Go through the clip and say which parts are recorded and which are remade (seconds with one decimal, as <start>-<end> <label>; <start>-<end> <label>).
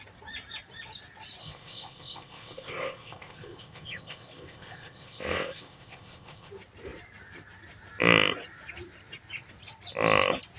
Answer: 0.0-1.4 recorded; 1.4-6.5 remade; 6.5-10.6 recorded